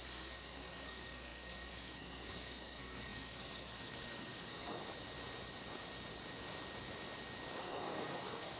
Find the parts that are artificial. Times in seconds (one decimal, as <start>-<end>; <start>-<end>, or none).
0.0-4.8; 7.6-8.6